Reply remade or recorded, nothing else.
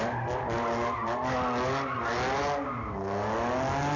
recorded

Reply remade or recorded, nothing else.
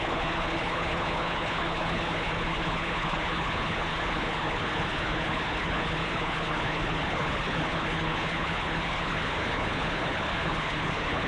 remade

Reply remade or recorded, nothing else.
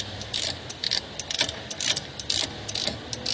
recorded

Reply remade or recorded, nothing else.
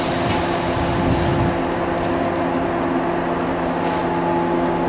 recorded